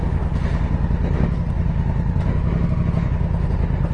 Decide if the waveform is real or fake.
real